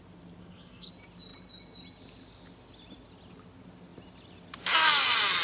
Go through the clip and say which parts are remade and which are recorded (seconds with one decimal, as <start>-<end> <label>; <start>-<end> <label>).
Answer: 0.0-0.4 recorded; 0.4-0.9 remade; 0.9-5.4 recorded